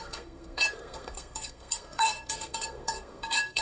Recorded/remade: remade